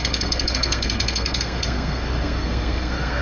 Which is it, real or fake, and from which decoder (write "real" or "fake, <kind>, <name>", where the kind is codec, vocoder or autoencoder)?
fake, codec, SNAC